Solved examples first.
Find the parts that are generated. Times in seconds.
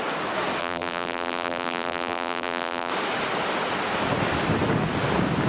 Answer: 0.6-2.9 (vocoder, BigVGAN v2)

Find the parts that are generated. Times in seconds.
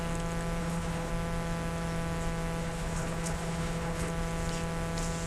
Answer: 0.6-1.1 (codec, HILCodec); 2.6-4.1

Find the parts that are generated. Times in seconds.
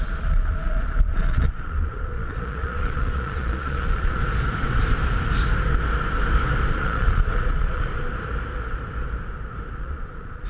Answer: 0.0-4.2 (vocoder, Vocos); 6.7-7.9; 9.8-10.5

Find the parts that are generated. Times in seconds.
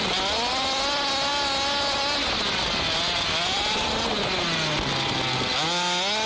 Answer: none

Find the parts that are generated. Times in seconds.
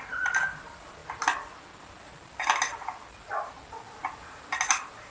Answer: none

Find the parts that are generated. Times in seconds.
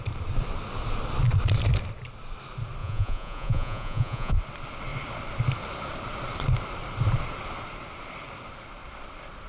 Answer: 2.8-4.4 (vocoder, Vocos)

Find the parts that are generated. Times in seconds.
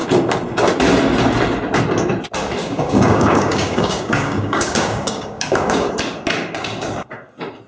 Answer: 2.6-5.9 (codec, DAC)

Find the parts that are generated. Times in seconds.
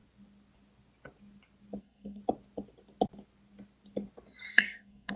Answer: 1.8-2.2 (codec, SNAC); 4.5-5.2